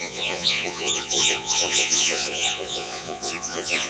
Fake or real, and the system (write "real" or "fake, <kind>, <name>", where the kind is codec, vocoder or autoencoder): fake, vocoder, Vocos